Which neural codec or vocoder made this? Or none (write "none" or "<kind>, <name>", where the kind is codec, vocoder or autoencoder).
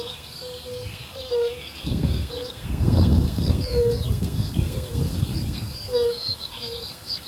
codec, SNAC